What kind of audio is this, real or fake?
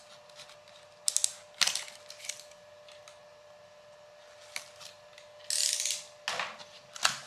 real